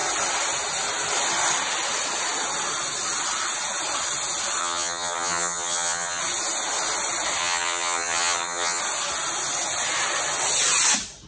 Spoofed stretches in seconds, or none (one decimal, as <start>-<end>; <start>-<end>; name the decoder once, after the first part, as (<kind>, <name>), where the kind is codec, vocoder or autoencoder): 4.6-6.2 (vocoder, HiFi-GAN); 7.4-8.8